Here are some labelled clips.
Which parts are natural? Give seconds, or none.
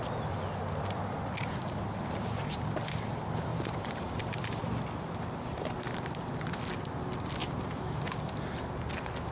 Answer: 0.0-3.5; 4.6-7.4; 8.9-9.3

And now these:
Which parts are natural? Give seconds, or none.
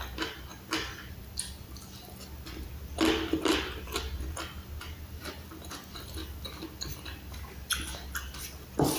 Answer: 0.0-9.0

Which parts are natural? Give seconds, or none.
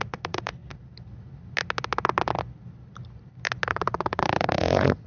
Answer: 0.6-3.7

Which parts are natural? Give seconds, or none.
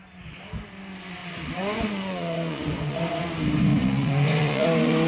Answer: 0.0-1.2; 3.2-3.7